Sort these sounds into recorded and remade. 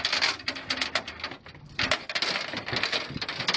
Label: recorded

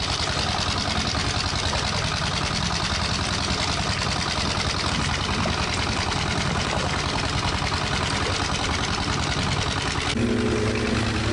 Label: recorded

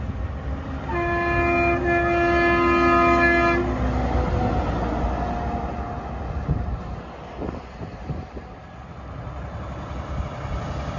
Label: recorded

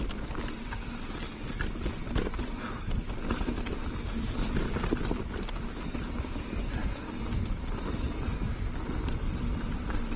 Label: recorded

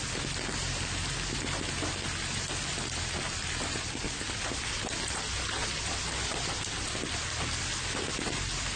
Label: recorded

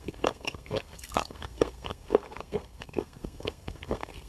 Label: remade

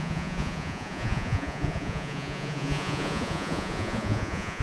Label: remade